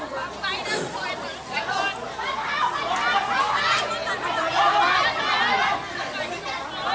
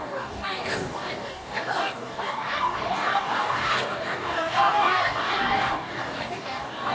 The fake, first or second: second